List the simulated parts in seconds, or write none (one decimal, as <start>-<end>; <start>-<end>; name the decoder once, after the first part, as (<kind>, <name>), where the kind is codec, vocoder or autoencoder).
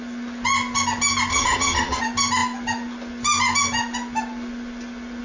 1.3-2.0 (vocoder, HiFi-GAN)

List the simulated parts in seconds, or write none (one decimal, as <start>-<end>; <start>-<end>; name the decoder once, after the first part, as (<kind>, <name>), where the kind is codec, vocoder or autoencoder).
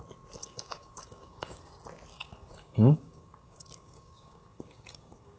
0.4-1.7 (codec, DAC); 2.1-5.4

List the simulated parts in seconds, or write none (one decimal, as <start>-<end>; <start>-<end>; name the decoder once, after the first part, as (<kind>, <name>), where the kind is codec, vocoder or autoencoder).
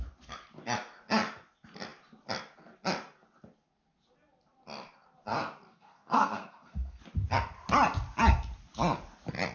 5.7-7.0 (codec, SNAC)